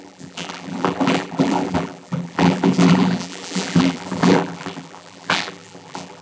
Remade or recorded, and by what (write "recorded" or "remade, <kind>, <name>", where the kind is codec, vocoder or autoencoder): remade, vocoder, BigVGAN v2